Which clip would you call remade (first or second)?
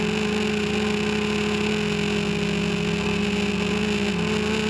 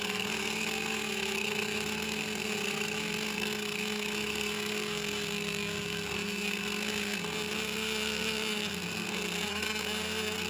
second